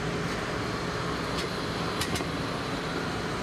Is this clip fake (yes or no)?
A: no